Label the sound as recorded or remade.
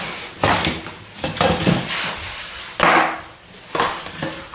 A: recorded